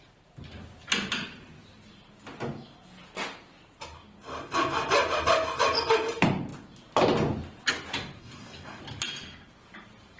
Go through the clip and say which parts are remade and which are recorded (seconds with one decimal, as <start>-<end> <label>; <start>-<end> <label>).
0.0-8.2 recorded; 8.2-8.8 remade; 8.8-10.2 recorded